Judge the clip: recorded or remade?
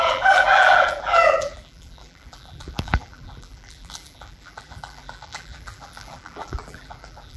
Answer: remade